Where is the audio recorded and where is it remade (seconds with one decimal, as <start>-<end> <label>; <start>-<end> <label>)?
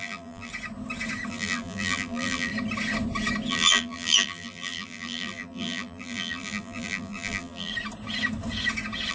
0.0-0.5 remade; 0.5-1.3 recorded; 1.3-2.5 remade; 2.5-3.5 recorded; 3.5-7.7 remade; 7.7-9.1 recorded